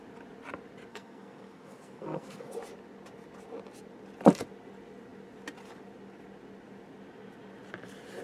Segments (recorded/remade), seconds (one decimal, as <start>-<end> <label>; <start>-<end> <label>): 0.0-0.9 recorded; 0.9-2.5 remade; 2.5-8.2 recorded